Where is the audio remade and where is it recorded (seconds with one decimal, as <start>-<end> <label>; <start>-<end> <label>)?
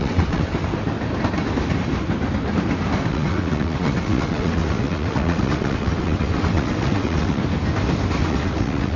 0.0-0.5 remade; 0.5-3.1 recorded; 3.1-7.4 remade; 7.4-8.2 recorded; 8.2-9.0 remade